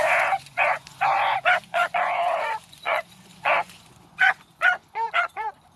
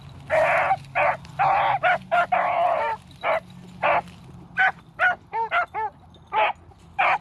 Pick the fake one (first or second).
first